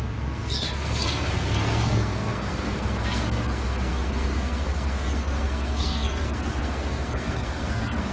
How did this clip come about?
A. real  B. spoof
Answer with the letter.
B